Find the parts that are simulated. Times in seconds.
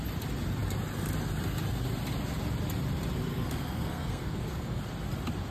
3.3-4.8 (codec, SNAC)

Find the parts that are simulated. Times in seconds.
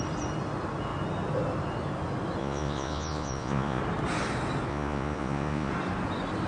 2.4-3.8 (vocoder, Vocos); 4.7-5.7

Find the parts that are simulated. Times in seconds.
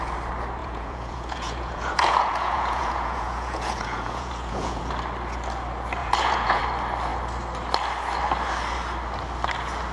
0.6-4.9 (vocoder, Vocos); 6.0-6.6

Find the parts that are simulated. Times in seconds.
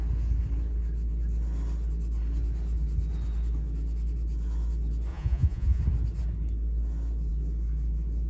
5.1-5.8 (vocoder, Vocos)